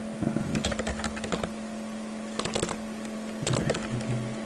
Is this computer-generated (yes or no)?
no